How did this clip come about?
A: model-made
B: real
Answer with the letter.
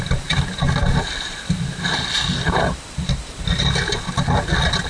B